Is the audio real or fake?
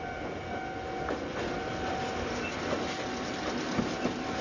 real